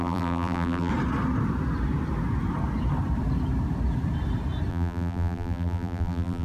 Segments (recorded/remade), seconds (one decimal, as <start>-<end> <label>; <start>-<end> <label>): 0.0-0.9 remade; 0.9-4.7 recorded; 4.7-6.4 remade